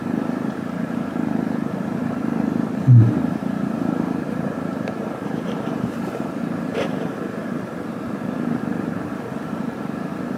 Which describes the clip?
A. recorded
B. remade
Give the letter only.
B